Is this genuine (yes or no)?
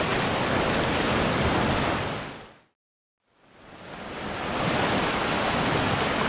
yes